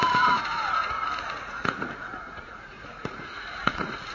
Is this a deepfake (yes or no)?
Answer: yes